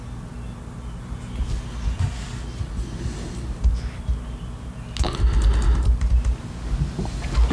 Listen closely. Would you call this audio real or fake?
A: real